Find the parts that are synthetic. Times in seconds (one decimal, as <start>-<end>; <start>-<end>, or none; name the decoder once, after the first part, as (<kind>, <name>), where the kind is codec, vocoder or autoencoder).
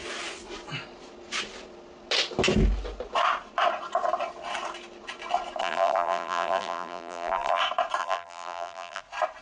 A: 5.6-7.6 (vocoder, BigVGAN v2); 8.0-9.0